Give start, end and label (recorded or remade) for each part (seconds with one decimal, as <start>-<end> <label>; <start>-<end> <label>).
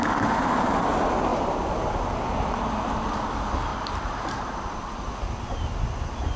0.0-1.3 recorded; 1.3-1.9 remade; 1.9-3.7 recorded; 3.7-5.1 remade; 5.1-6.4 recorded